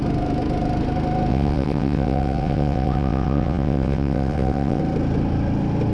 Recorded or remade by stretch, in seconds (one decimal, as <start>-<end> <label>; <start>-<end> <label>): 0.0-1.3 recorded; 1.3-4.8 remade; 4.8-5.9 recorded